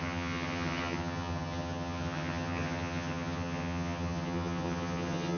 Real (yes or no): no